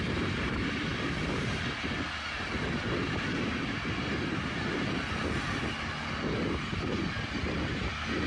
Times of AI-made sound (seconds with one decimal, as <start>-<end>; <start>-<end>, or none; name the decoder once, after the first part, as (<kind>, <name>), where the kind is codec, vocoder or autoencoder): none